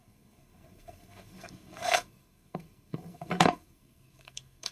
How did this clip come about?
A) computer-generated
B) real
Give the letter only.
A